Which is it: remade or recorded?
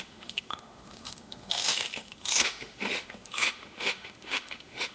remade